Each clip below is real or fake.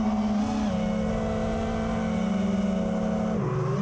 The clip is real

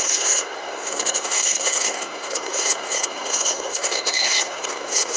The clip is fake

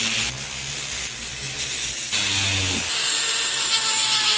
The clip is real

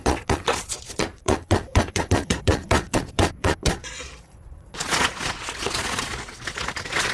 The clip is fake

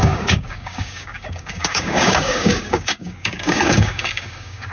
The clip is fake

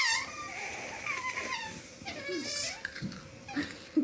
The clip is real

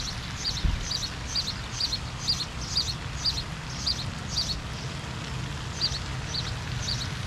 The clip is real